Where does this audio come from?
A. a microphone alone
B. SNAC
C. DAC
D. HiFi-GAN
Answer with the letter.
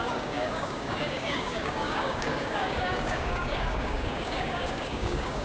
C